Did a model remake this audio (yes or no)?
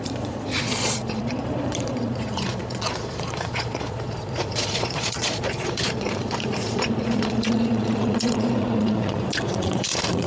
yes